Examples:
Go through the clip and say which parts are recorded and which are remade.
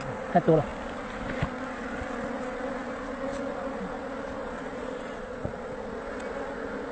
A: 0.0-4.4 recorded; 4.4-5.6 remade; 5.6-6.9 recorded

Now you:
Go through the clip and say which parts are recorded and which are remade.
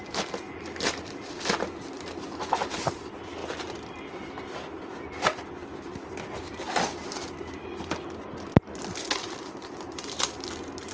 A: 0.0-10.9 recorded